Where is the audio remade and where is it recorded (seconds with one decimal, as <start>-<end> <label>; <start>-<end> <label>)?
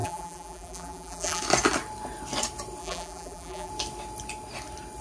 0.0-1.4 remade; 1.4-2.8 recorded; 2.8-3.7 remade; 3.7-5.0 recorded